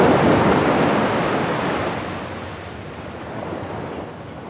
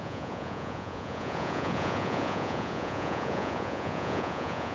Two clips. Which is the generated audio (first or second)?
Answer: second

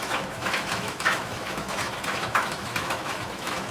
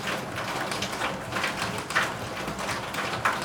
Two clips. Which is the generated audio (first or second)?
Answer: first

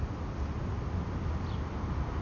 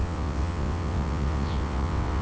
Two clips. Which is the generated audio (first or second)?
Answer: second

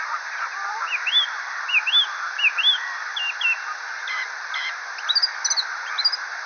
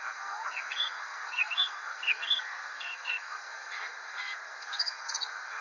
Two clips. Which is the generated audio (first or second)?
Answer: second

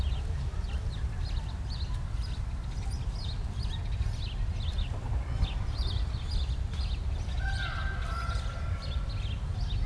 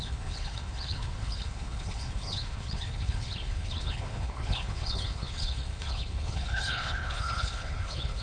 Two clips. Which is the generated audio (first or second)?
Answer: second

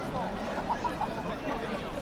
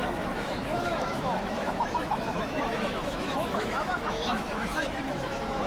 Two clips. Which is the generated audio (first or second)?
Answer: second